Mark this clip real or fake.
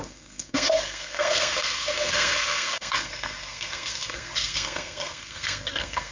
fake